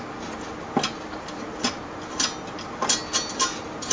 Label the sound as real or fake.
real